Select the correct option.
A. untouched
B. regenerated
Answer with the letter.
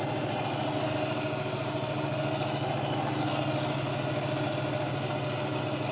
A